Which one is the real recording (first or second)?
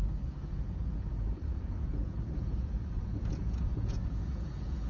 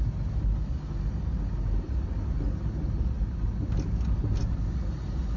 second